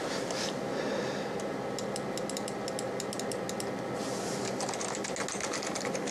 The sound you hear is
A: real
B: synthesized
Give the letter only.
A